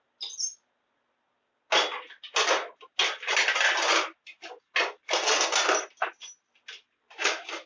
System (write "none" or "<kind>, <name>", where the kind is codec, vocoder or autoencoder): none